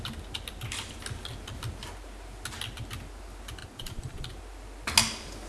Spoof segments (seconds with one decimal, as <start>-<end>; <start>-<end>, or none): 3.6-4.3